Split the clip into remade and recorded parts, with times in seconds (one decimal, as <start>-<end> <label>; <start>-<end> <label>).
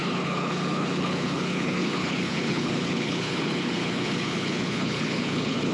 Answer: 0.0-5.7 remade